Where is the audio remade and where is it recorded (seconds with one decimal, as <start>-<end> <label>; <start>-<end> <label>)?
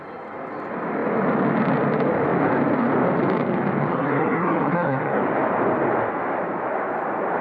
0.0-3.9 recorded; 3.9-5.2 remade; 5.2-7.4 recorded